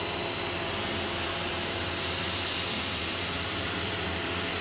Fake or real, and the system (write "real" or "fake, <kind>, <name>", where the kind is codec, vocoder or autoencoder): fake, vocoder, BigVGAN v2